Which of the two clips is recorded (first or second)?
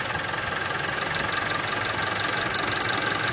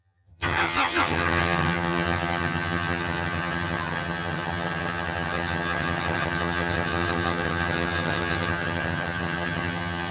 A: first